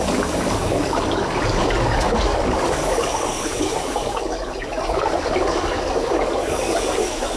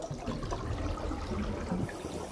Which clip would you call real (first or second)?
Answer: second